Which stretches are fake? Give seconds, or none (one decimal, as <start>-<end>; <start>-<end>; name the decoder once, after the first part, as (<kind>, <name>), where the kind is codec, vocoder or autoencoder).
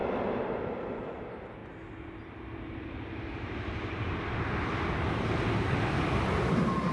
none